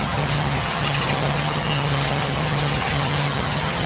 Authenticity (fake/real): fake